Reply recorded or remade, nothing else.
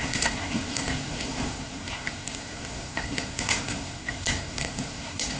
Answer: remade